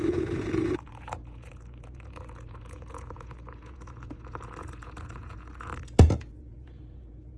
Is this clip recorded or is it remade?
remade